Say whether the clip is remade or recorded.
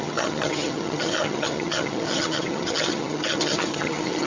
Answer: remade